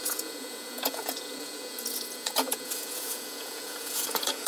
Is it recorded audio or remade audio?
remade